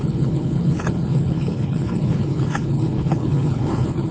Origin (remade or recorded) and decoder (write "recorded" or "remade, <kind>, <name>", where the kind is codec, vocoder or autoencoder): remade, codec, HILCodec